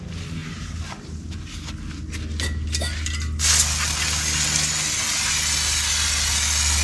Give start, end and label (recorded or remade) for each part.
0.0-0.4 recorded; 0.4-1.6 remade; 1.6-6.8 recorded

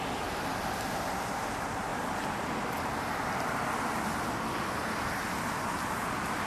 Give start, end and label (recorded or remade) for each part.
0.0-6.5 recorded

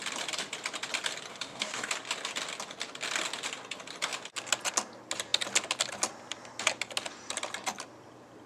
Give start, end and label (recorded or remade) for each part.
0.0-1.3 recorded; 1.3-1.9 remade; 1.9-8.5 recorded

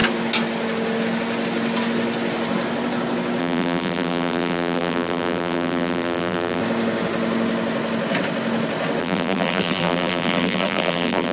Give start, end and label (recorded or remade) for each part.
0.0-3.4 recorded; 3.4-6.6 remade; 6.6-9.0 recorded; 9.0-11.3 remade

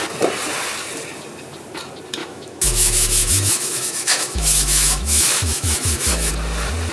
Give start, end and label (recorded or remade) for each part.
0.0-2.2 recorded; 2.2-6.3 remade; 6.3-6.9 recorded

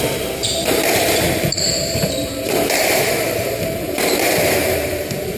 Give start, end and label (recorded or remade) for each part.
0.0-5.4 remade